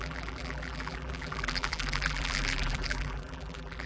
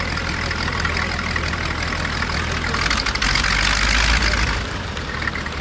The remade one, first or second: first